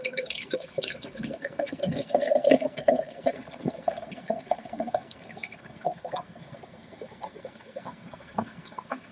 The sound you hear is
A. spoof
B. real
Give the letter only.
A